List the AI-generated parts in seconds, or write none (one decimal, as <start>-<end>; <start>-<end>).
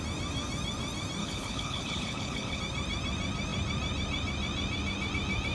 1.2-2.6